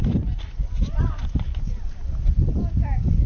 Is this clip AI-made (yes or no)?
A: no